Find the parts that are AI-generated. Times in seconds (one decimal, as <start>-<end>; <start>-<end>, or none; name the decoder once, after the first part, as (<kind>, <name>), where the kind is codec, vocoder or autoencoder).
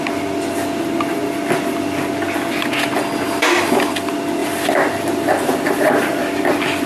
none